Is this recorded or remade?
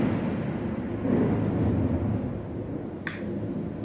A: recorded